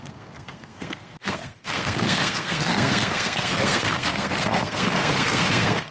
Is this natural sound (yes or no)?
no